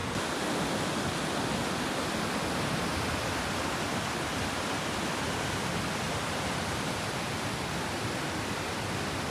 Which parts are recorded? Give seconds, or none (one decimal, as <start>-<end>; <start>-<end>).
0.0-9.3